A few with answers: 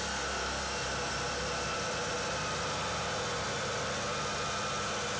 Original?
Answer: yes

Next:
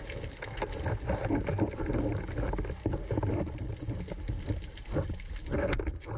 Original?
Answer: yes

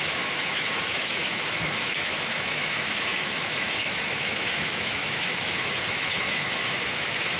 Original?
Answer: no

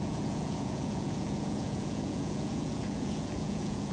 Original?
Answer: no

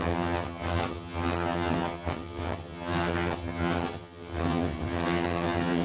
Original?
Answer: no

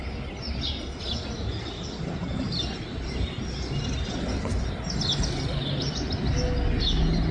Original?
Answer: yes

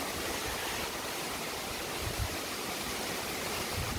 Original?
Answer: yes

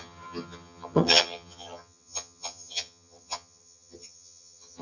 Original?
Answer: no